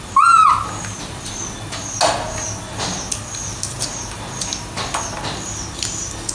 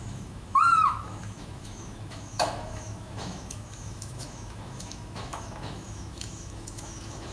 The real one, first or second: first